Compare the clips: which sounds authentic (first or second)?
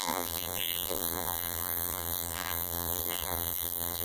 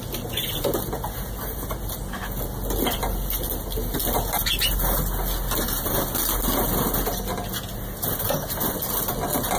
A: second